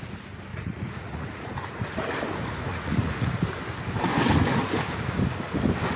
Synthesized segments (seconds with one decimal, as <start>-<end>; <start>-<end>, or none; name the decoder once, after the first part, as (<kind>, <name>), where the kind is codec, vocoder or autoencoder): 0.5-2.1 (vocoder, Vocos); 2.7-3.4